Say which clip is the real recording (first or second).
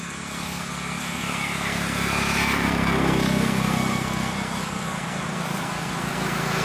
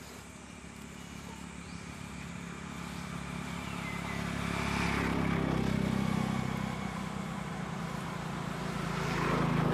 second